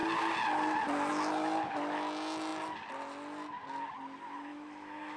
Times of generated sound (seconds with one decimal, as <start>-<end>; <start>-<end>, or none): 4.5-5.2